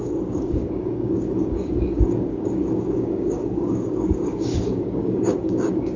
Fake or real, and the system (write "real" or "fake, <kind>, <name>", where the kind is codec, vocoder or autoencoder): fake, codec, DAC